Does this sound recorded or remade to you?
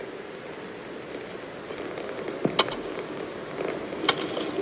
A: recorded